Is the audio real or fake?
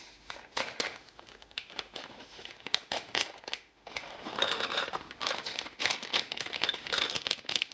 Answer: fake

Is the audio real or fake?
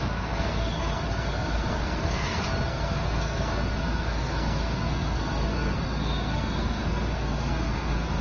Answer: fake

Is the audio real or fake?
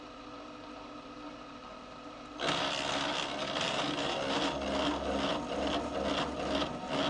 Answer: real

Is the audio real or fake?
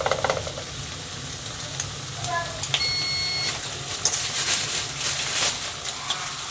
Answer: real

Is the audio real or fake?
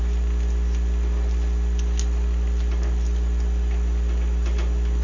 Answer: real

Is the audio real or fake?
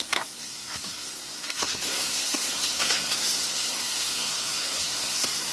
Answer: fake